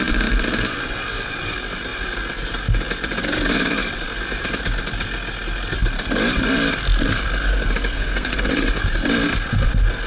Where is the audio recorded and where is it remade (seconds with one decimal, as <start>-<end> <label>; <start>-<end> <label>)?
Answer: 0.0-7.9 recorded; 7.9-8.5 remade; 8.5-10.1 recorded